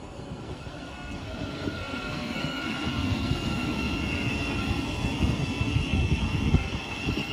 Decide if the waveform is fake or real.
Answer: fake